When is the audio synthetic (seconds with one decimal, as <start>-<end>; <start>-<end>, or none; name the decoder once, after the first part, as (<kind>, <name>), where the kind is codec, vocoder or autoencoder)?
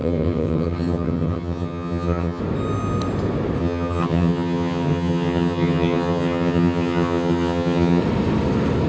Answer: 0.0-2.4 (vocoder, HiFi-GAN); 3.6-8.0